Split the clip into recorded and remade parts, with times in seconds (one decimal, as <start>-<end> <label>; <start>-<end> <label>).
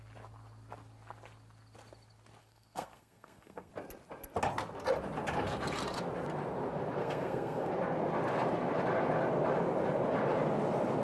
0.0-2.4 recorded; 2.4-3.7 remade; 3.7-7.0 recorded; 7.0-7.7 remade; 7.7-11.0 recorded